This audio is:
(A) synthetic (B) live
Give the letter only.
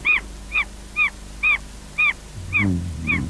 B